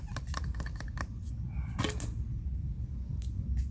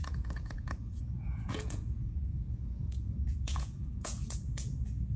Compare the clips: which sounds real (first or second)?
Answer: first